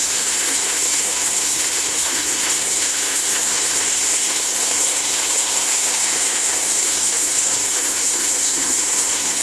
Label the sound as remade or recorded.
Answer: remade